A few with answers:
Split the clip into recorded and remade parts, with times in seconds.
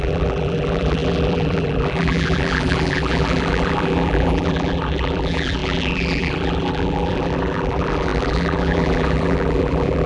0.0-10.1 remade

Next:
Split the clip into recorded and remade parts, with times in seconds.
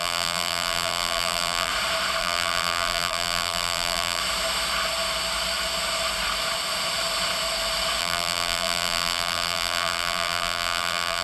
0.0-1.7 remade; 1.7-2.2 recorded; 2.2-4.2 remade; 4.2-8.0 recorded; 8.0-11.2 remade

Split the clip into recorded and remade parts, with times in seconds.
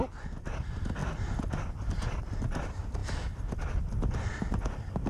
0.0-5.1 recorded